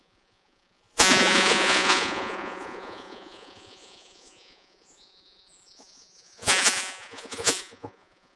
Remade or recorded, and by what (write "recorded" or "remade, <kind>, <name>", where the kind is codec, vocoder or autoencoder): remade, vocoder, Vocos